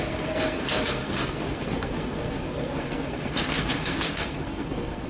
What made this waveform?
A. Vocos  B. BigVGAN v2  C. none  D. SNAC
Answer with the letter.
D